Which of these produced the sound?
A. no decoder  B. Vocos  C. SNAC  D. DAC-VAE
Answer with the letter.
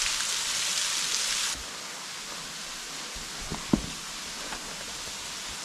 A